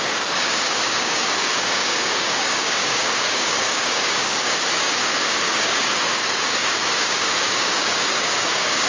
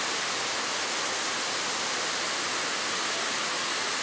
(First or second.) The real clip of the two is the second